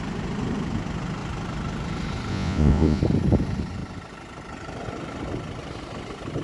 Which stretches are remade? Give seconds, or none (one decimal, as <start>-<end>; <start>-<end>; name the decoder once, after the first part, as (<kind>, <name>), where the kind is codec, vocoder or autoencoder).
2.3-3.0 (vocoder, Vocos)